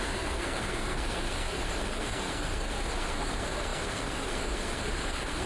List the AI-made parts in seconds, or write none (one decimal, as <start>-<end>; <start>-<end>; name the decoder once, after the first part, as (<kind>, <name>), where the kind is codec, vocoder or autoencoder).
0.0-5.5 (codec, SNAC)